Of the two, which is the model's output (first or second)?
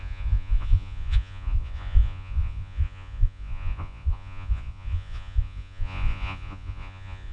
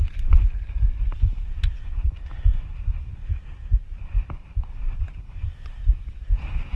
first